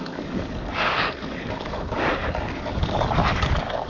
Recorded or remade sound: remade